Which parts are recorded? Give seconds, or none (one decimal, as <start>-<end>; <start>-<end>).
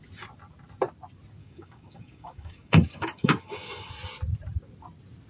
0.0-1.4; 3.9-5.3